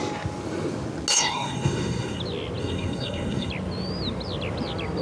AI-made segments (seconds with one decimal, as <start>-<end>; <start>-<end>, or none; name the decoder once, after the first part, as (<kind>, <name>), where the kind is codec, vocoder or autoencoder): 1.1-2.2 (codec, SNAC); 2.6-3.5